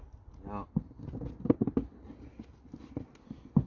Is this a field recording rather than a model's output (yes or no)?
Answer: yes